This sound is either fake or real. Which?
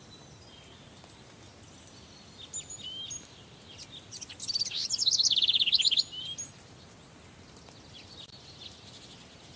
real